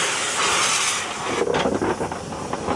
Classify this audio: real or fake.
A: real